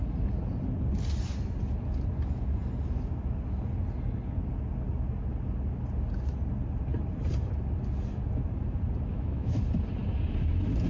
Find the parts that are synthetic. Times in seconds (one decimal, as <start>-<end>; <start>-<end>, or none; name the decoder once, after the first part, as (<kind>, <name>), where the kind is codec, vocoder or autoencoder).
9.1-9.6 (autoencoder, DAC-VAE)